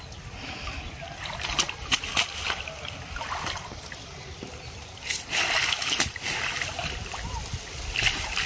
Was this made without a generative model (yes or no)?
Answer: yes